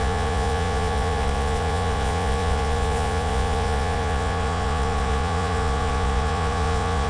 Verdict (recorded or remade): remade